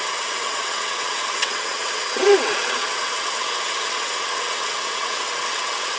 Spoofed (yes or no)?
yes